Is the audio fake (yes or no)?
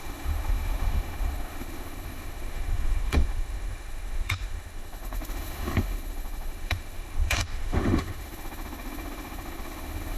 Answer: yes